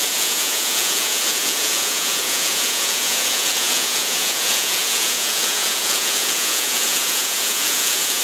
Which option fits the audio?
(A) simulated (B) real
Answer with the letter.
A